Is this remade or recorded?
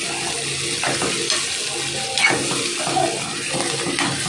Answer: recorded